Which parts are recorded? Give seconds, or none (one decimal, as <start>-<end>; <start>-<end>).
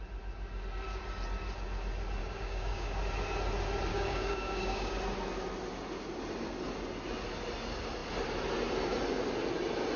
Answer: 0.0-2.2; 3.0-3.9; 5.0-10.0